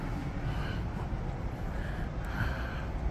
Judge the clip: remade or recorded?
recorded